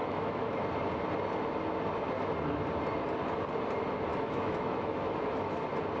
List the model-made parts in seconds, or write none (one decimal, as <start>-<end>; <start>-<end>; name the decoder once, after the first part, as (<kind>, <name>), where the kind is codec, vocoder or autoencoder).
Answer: 0.0-0.6 (autoencoder, DAC-VAE); 4.1-5.6